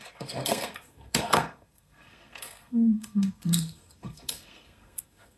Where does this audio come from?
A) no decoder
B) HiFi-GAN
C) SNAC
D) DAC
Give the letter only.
C